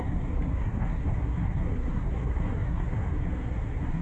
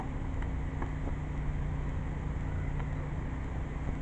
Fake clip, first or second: first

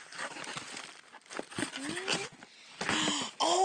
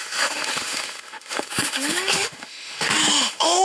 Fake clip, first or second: second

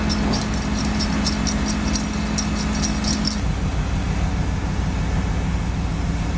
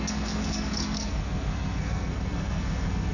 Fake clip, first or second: second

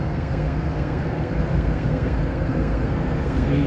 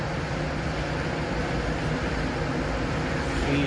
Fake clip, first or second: first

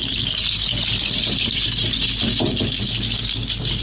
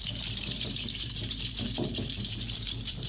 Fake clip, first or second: second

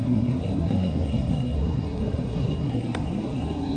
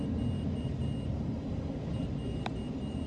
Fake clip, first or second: first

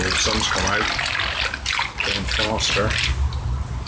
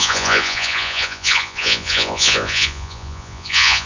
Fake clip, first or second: second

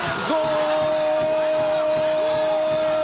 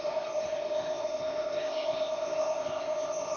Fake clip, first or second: second